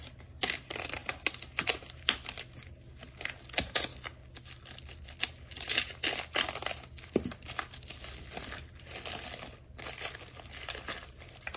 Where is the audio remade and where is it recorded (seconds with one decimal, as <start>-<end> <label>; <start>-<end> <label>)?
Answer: 0.0-11.6 recorded